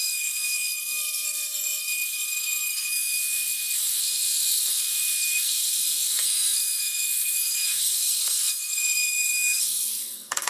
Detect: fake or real fake